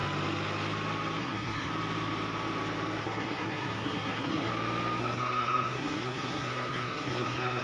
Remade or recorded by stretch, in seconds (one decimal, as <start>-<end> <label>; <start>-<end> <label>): 0.0-1.2 recorded; 1.2-1.7 remade; 1.7-3.0 recorded; 3.0-4.5 remade; 4.5-5.0 recorded; 5.0-7.6 remade